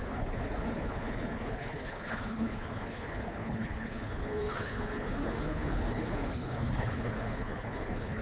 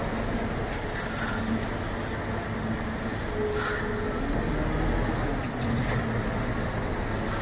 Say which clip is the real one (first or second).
second